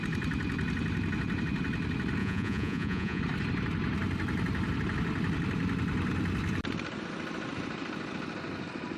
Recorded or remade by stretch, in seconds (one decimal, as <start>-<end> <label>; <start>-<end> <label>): 0.0-2.2 recorded; 2.2-3.2 remade; 3.2-9.0 recorded